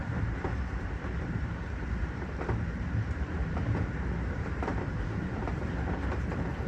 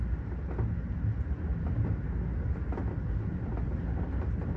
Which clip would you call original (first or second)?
second